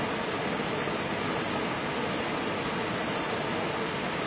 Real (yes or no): yes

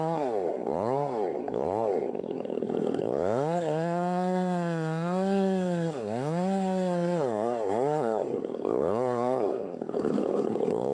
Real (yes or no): no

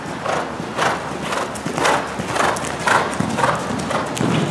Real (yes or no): yes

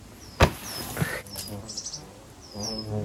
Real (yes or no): yes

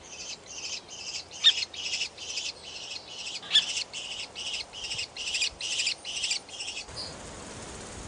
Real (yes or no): no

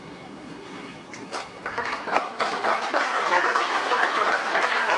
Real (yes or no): no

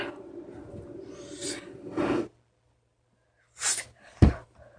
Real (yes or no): yes